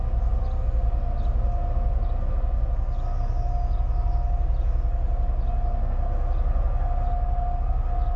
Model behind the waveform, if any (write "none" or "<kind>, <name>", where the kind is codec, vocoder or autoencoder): none